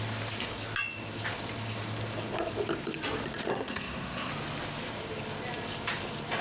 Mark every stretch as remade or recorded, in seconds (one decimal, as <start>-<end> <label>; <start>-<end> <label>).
0.0-3.5 recorded; 3.5-4.3 remade; 4.3-6.4 recorded